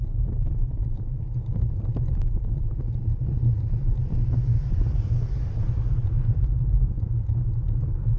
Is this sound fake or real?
fake